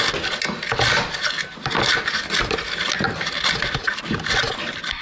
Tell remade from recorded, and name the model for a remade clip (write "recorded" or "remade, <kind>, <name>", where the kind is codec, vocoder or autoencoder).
recorded